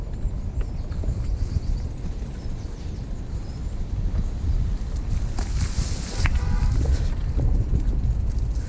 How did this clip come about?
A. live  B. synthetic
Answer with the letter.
A